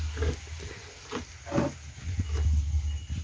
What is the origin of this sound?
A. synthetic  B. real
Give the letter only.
B